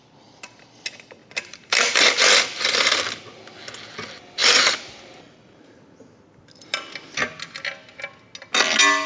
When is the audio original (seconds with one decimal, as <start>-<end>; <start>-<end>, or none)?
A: 0.0-1.2; 1.9-4.4; 5.8-9.1